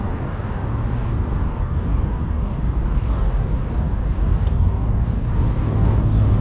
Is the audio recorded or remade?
remade